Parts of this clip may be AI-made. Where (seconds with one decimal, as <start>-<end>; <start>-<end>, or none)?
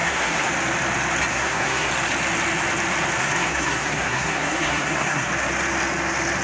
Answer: 0.0-0.5; 1.3-1.9; 3.2-5.3